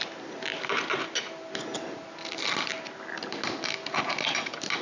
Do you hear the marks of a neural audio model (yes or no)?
no